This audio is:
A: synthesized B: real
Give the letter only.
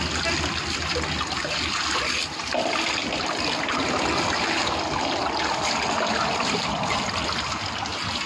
B